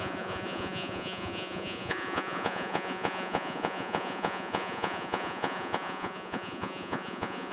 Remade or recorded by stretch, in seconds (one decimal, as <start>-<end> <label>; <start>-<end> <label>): 0.0-7.5 remade